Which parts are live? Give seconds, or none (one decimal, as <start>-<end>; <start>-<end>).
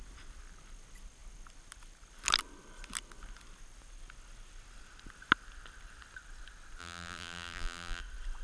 0.0-6.8; 8.0-8.4